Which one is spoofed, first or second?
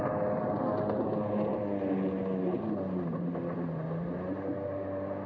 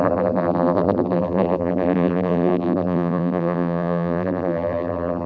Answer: second